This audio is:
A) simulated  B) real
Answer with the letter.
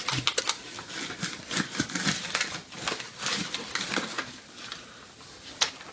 B